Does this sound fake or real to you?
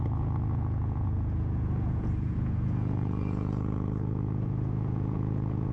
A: fake